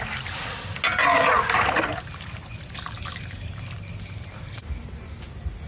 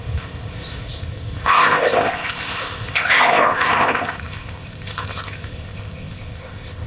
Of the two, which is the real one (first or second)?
first